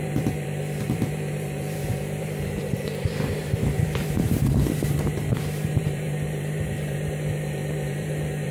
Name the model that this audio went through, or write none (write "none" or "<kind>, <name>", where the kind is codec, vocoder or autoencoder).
vocoder, BigVGAN v2